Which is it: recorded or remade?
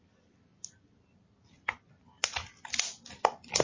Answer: remade